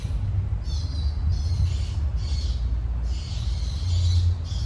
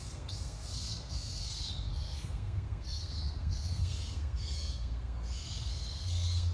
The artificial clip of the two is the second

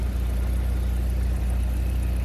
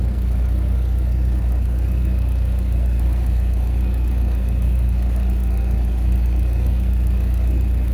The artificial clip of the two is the second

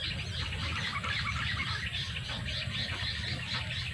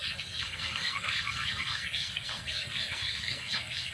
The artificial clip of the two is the second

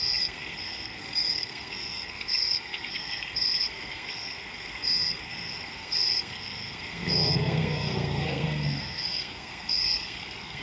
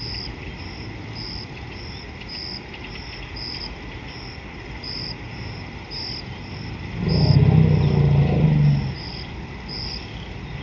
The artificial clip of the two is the first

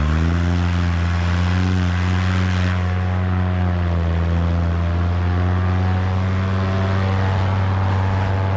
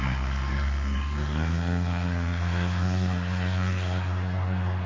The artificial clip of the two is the second